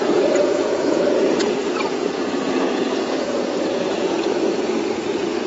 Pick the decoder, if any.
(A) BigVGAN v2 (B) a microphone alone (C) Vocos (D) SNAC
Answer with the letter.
C